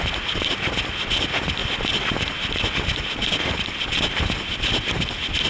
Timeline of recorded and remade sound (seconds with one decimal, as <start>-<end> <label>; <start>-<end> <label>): 0.0-5.5 recorded